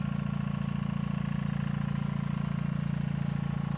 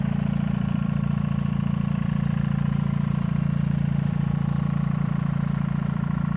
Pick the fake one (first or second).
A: second